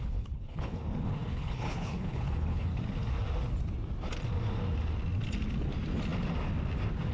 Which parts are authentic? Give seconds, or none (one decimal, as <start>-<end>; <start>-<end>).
0.8-1.3; 2.7-7.1